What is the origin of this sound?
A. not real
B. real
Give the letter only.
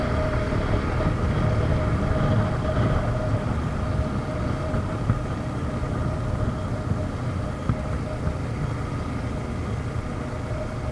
B